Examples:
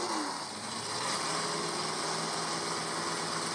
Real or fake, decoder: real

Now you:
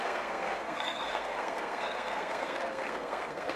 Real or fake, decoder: fake, codec, SNAC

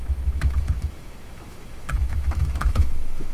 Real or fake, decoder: fake, autoencoder, DAC-VAE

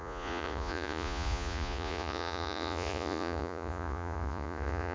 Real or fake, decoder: fake, vocoder, Vocos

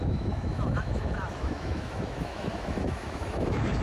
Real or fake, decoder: fake, autoencoder, DAC-VAE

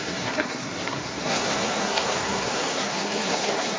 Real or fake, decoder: fake, codec, SNAC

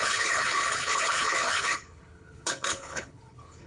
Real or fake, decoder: fake, codec, HILCodec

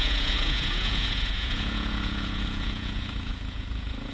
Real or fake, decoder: fake, vocoder, Vocos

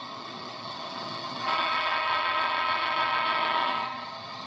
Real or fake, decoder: fake, vocoder, HiFi-GAN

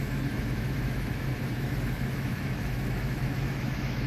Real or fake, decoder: fake, autoencoder, DAC-VAE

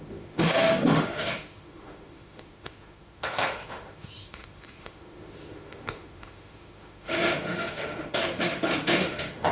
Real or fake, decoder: fake, autoencoder, DAC-VAE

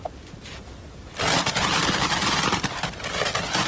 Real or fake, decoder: real